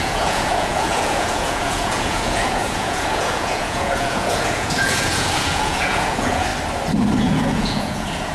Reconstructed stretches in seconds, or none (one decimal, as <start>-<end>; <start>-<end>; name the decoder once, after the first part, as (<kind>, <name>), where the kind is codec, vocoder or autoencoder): 0.0-6.5 (vocoder, Vocos); 7.2-8.3